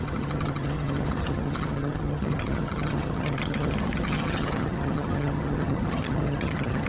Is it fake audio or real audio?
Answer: fake